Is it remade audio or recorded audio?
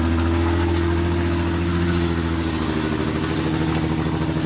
recorded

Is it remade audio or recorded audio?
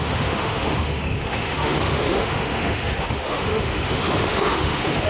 remade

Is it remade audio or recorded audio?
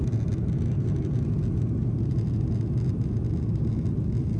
recorded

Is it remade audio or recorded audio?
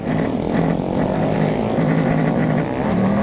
recorded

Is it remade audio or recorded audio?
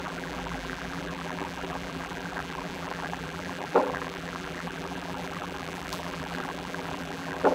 remade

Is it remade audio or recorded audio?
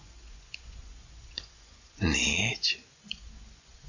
remade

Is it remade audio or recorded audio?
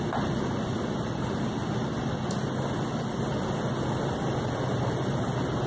recorded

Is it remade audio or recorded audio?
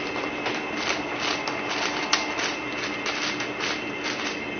recorded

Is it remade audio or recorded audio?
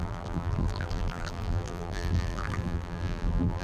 remade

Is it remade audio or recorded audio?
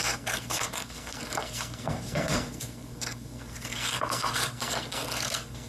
remade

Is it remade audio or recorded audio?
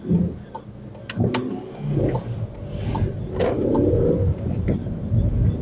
recorded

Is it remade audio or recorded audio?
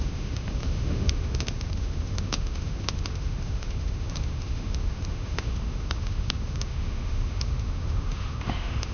remade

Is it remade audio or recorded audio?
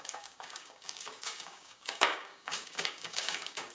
remade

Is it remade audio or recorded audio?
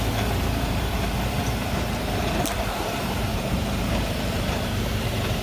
remade